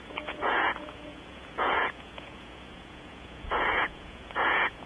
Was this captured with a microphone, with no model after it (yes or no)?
no